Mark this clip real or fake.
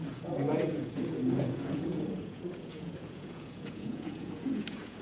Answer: fake